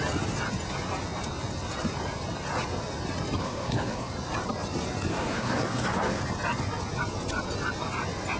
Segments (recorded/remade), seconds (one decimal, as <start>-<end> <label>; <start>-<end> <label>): 0.0-3.4 recorded; 3.4-4.1 remade; 4.1-5.1 recorded; 5.1-6.2 remade; 6.2-8.4 recorded